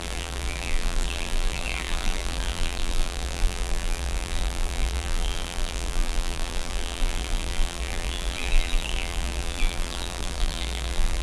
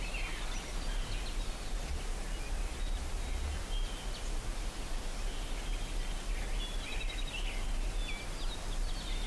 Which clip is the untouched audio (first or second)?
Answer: second